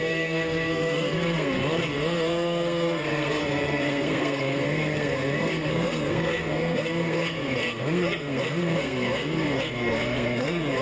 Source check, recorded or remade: remade